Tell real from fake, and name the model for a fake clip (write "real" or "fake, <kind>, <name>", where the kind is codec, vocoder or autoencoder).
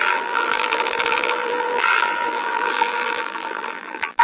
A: fake, vocoder, BigVGAN v2